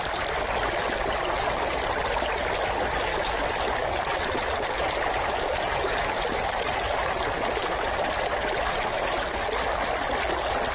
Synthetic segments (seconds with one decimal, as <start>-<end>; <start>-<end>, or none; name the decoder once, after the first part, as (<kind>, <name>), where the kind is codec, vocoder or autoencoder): 3.1-8.2 (vocoder, BigVGAN v2)